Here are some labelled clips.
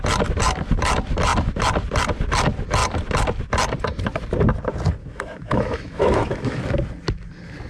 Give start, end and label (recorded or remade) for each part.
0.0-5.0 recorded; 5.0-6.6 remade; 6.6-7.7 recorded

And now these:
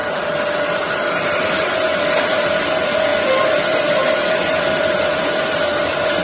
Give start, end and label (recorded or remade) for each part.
0.0-6.2 recorded

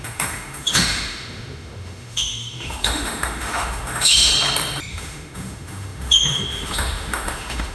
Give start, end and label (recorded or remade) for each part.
0.0-4.3 remade; 4.3-4.9 recorded; 4.9-7.7 remade

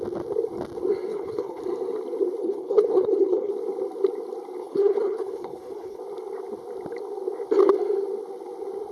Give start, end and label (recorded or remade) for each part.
0.0-1.1 recorded; 1.1-1.6 remade; 1.6-2.4 recorded; 2.4-3.5 remade; 3.5-4.6 recorded; 4.6-6.0 remade; 6.0-8.9 recorded